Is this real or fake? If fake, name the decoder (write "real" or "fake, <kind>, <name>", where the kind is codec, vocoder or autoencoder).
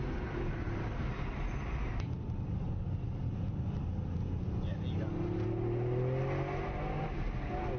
real